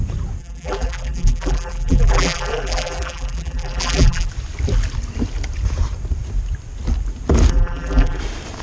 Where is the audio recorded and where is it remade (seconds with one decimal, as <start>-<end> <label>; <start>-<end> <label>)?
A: 0.0-0.4 recorded; 0.4-4.3 remade; 4.3-7.5 recorded; 7.5-8.2 remade; 8.2-8.6 recorded

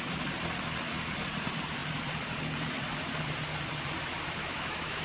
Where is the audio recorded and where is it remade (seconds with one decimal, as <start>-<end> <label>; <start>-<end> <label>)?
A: 0.0-4.4 recorded; 4.4-5.0 remade

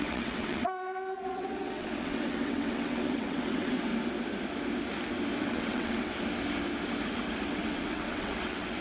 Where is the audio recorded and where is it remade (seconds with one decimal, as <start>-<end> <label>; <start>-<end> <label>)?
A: 0.0-3.9 remade; 3.9-5.4 recorded; 5.4-6.1 remade; 6.1-7.5 recorded; 7.5-8.8 remade

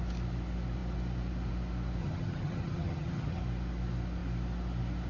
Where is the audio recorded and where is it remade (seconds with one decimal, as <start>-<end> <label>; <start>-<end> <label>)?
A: 0.0-2.0 recorded; 2.0-3.4 remade; 3.4-5.1 recorded

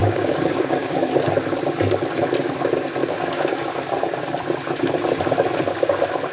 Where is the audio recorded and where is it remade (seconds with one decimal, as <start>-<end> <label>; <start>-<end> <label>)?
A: 0.0-1.1 remade; 1.1-3.0 recorded; 3.0-3.6 remade; 3.6-6.3 recorded

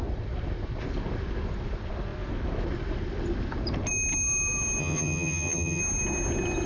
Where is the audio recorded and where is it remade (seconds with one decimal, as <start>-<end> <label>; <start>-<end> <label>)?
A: 0.0-4.8 recorded; 4.8-5.8 remade; 5.8-6.7 recorded

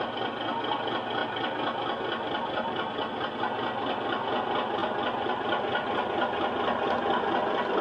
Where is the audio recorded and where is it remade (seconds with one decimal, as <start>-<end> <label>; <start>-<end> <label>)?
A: 0.0-7.8 recorded